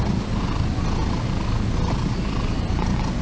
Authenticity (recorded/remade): recorded